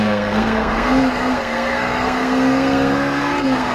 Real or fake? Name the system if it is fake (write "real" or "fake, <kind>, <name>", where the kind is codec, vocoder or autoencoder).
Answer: fake, codec, SNAC